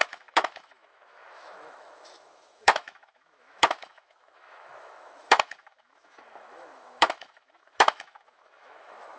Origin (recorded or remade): remade